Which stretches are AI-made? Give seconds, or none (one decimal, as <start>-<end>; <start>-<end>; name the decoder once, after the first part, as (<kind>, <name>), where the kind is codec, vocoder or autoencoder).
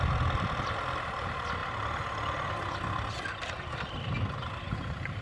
none